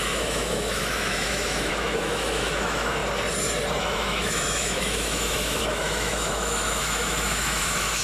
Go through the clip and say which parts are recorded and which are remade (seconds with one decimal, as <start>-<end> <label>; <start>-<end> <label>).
0.0-3.0 remade; 3.0-3.8 recorded; 3.8-8.0 remade